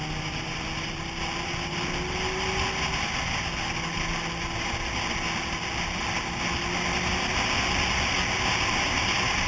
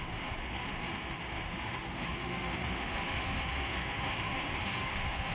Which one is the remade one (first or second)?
second